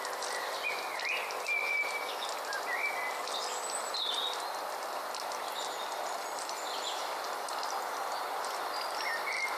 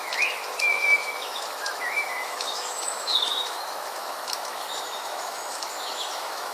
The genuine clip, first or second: first